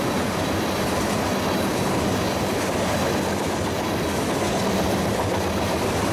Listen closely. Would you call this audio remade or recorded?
recorded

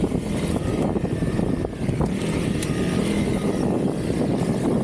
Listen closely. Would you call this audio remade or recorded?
recorded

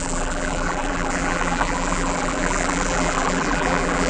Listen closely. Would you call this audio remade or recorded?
remade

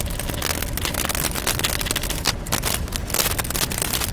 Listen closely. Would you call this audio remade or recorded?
recorded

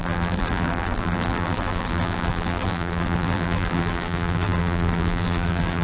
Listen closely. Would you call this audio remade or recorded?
remade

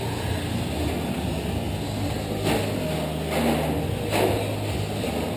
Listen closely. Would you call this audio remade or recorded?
recorded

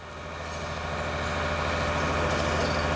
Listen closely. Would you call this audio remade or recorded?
recorded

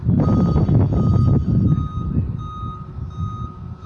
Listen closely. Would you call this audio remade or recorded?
recorded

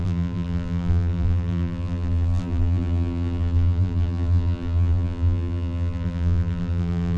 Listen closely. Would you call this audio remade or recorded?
remade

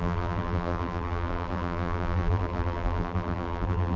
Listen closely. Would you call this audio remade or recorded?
remade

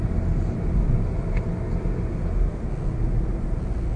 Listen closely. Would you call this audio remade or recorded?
recorded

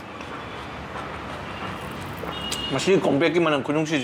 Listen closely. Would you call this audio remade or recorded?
recorded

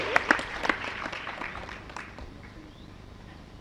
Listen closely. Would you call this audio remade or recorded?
remade